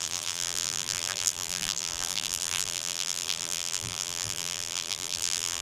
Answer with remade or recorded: remade